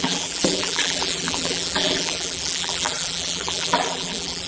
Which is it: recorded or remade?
remade